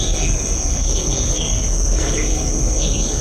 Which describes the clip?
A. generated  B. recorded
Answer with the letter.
A